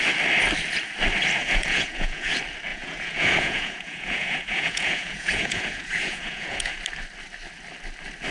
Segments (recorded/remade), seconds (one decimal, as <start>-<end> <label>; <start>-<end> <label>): 0.0-1.4 recorded; 1.4-2.3 remade; 2.3-2.7 recorded; 2.7-6.8 remade; 6.8-8.3 recorded